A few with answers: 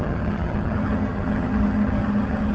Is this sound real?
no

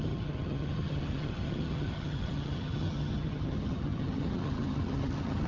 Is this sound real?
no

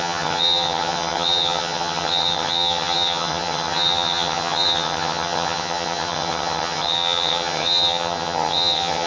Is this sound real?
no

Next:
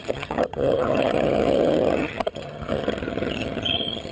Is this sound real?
no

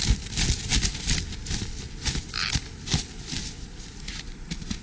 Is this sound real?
yes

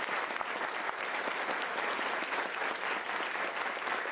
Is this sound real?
yes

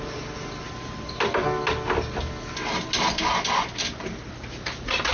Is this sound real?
yes